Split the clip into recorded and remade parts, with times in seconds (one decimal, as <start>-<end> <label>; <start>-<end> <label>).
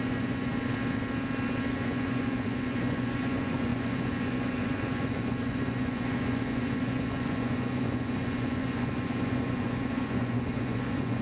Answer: 0.0-0.5 remade; 0.5-1.7 recorded; 1.7-11.2 remade